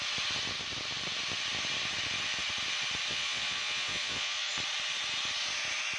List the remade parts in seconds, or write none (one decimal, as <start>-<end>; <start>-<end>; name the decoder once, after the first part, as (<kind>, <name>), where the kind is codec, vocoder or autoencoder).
3.1-4.5 (vocoder, Vocos)